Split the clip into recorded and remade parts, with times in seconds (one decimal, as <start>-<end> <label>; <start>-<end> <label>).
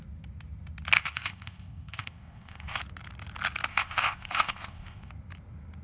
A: 0.0-1.0 recorded; 1.0-2.8 remade; 2.8-3.7 recorded; 3.7-5.1 remade; 5.1-5.8 recorded